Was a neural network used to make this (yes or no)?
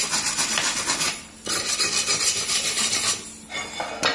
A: no